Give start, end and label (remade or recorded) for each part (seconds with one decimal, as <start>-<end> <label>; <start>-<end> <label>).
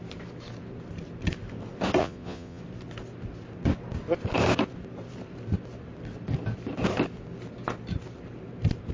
0.0-2.0 recorded; 2.0-2.6 remade; 2.6-8.9 recorded